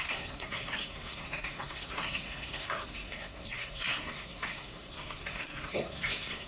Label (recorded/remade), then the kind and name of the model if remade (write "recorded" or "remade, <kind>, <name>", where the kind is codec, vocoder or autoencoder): remade, codec, SNAC